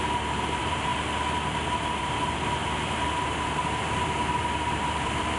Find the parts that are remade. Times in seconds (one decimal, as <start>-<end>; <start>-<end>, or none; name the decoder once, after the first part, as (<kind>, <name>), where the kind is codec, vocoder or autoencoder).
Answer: 0.0-0.9 (vocoder, BigVGAN v2); 2.0-5.4